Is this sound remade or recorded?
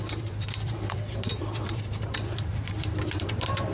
remade